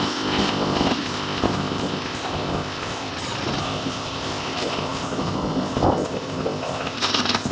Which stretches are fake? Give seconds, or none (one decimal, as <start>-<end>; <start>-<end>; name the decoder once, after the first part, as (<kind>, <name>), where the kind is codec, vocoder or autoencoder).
0.0-3.1 (codec, ZipCodec); 3.6-7.5